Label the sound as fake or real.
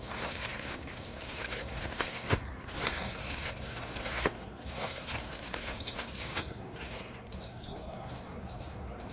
fake